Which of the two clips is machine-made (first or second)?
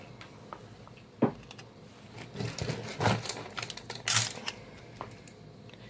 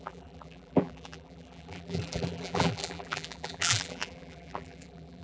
second